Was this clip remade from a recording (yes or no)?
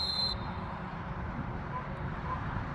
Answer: yes